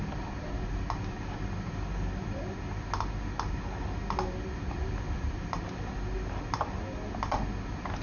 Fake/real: real